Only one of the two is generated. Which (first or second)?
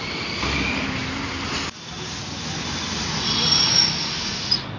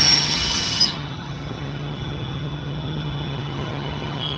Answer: second